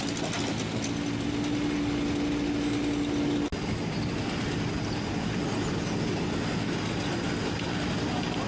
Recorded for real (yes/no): yes